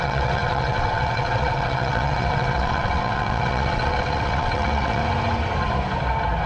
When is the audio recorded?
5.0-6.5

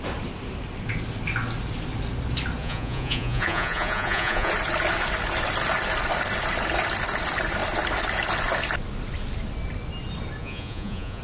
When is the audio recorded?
0.0-2.6; 4.5-10.4